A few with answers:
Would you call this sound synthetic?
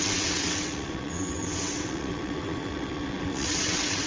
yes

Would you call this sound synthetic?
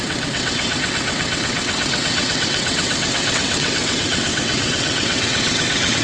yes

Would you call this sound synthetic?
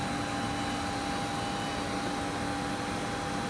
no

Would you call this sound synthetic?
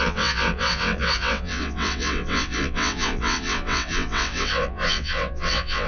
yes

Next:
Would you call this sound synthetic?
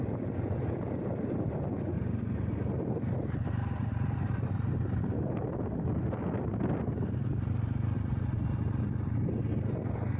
no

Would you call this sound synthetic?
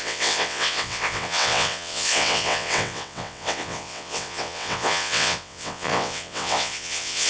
yes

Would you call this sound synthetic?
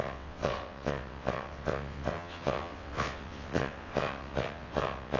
yes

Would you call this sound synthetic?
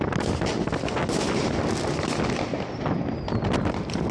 no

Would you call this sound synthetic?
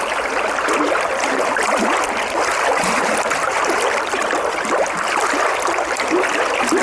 no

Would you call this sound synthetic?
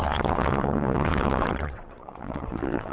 yes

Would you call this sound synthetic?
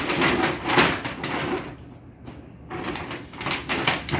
no